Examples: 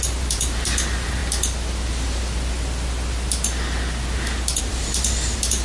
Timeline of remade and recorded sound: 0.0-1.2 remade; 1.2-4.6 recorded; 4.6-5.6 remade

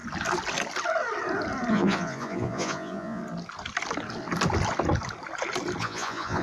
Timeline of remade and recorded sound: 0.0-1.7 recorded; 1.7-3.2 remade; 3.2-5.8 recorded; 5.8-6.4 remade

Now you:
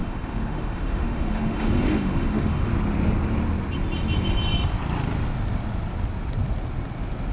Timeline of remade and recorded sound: 0.0-2.7 remade; 2.7-7.3 recorded

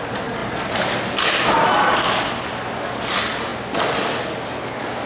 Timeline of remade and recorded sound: 0.0-5.1 recorded

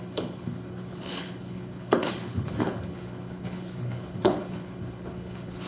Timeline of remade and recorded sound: 0.0-5.7 remade